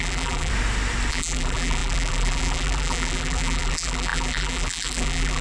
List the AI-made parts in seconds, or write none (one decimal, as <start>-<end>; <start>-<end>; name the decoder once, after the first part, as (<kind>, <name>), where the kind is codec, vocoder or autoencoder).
0.0-0.5 (vocoder, BigVGAN v2); 1.1-5.4